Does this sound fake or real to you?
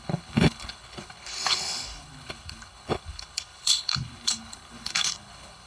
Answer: fake